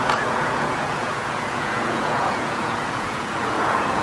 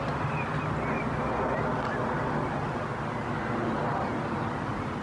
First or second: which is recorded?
second